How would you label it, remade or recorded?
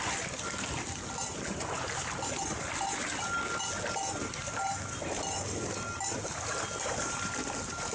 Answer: recorded